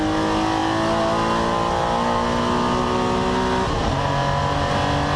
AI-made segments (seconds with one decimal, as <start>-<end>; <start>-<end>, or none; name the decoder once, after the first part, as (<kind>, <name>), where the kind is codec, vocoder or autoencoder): none

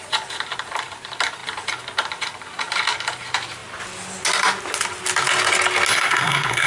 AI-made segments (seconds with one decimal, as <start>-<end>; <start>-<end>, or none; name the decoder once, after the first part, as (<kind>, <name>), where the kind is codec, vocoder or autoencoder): 5.9-6.7 (codec, SNAC)

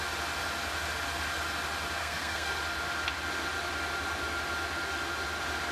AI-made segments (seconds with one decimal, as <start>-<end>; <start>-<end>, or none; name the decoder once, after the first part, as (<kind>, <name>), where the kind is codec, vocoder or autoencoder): 2.0-2.5 (codec, SNAC)